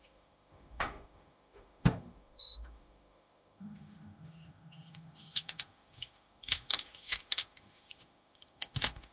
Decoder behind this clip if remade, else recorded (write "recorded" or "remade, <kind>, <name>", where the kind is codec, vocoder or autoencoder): remade, autoencoder, DAC-VAE